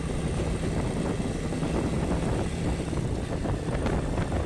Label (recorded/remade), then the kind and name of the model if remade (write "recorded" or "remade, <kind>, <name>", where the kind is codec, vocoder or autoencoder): recorded